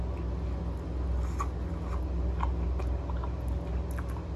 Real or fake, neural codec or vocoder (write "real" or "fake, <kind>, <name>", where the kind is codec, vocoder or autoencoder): real